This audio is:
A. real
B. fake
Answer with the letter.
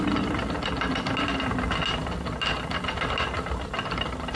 A